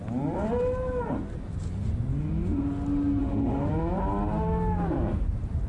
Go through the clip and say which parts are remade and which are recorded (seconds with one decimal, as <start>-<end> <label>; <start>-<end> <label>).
0.0-3.2 recorded; 3.2-3.7 remade; 3.7-5.7 recorded